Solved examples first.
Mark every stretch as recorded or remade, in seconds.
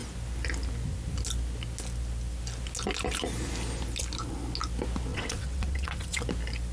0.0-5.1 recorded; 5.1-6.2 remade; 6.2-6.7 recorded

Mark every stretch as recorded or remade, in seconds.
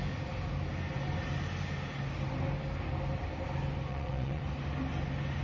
0.0-3.9 recorded; 3.9-4.4 remade; 4.4-5.4 recorded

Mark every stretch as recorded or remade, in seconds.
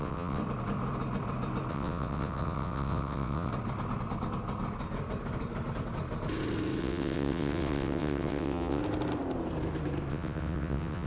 0.0-0.4 remade; 0.4-1.7 recorded; 1.7-3.5 remade; 3.5-6.8 recorded; 6.8-8.8 remade; 8.8-10.1 recorded; 10.1-11.1 remade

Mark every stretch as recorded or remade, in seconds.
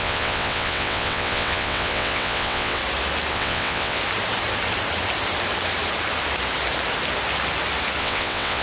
0.0-2.8 remade; 2.8-3.3 recorded; 3.3-4.0 remade; 4.0-8.0 recorded; 8.0-8.6 remade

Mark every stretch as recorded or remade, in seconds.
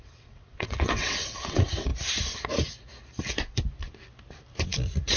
0.0-1.9 remade; 1.9-5.2 recorded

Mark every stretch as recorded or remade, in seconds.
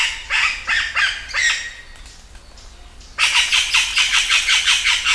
0.0-3.9 recorded; 3.9-4.6 remade; 4.6-5.1 recorded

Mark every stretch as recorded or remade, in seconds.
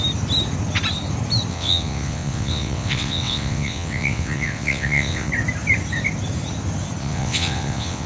0.0-1.5 recorded; 1.5-5.3 remade; 5.3-7.0 recorded; 7.0-8.1 remade